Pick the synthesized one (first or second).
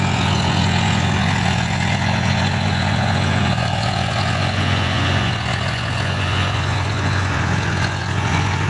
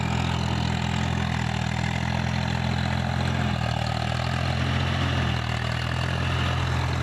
first